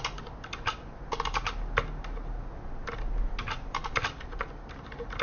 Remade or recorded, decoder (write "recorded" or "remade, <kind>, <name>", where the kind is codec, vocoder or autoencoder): recorded